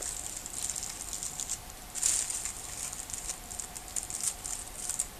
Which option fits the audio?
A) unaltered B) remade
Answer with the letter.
A